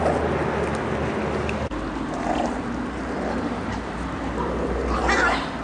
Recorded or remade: recorded